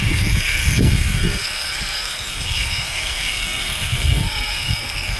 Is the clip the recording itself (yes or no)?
no